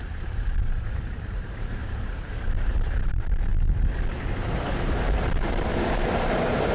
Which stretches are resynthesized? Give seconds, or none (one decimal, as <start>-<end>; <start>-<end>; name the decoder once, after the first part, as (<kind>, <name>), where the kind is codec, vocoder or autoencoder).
0.0-3.5 (vocoder, BigVGAN v2); 4.1-6.7